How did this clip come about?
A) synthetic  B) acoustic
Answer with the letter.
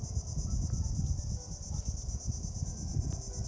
B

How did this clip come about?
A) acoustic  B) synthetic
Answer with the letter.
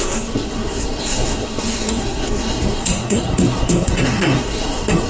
B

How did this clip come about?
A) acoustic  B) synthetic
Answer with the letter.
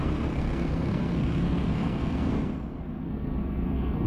B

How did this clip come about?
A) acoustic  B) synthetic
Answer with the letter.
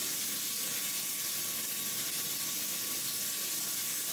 A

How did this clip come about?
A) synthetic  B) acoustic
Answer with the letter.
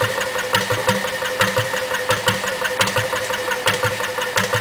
B